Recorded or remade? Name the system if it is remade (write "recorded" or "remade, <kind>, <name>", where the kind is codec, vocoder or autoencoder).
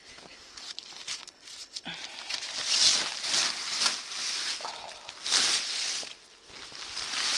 recorded